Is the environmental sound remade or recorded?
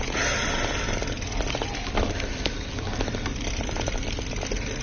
recorded